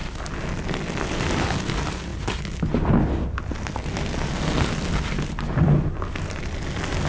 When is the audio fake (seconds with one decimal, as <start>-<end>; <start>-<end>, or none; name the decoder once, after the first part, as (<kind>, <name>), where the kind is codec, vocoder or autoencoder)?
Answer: none